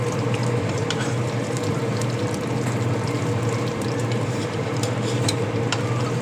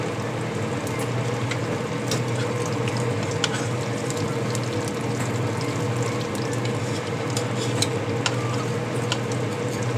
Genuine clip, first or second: second